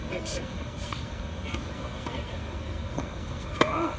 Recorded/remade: remade